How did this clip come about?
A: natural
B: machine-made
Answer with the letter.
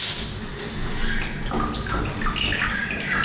A